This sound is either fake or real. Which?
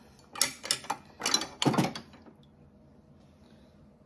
real